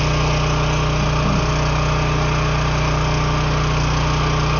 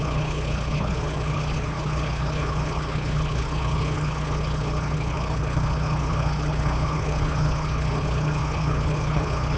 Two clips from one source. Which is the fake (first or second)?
second